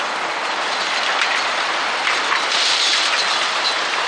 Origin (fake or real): real